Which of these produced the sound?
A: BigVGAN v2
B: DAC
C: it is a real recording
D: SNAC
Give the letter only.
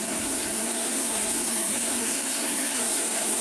D